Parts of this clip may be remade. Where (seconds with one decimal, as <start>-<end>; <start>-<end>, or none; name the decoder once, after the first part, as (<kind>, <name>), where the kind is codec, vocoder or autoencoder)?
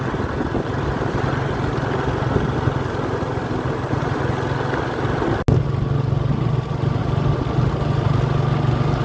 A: none